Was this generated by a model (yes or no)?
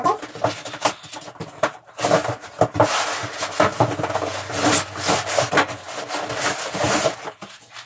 no